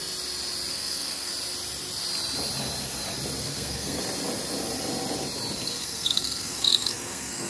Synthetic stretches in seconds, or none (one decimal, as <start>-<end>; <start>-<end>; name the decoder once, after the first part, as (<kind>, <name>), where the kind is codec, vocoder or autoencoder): 0.7-1.3 (codec, SNAC); 3.4-4.0; 5.7-7.5